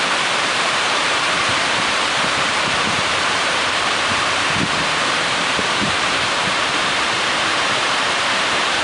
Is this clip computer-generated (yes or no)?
yes